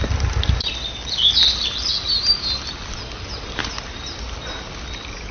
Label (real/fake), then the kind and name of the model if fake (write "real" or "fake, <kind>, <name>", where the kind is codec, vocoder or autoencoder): real